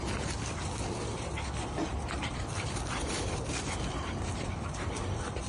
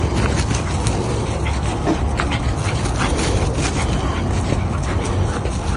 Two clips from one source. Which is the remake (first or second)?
first